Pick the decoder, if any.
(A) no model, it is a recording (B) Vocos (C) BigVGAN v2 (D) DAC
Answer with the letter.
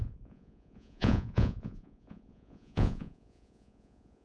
B